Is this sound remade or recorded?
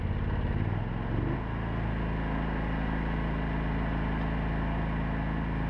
recorded